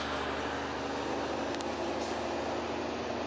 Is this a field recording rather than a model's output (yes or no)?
yes